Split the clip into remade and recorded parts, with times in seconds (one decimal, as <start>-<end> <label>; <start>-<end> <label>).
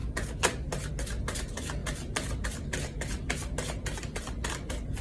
0.0-5.0 recorded